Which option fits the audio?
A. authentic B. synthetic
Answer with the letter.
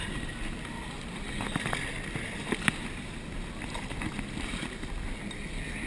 A